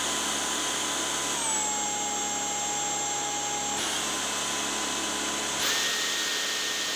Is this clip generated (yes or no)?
no